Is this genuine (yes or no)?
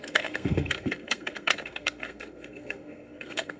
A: no